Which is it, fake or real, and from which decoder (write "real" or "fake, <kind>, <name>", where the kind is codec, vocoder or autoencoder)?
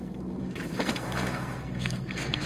fake, codec, SNAC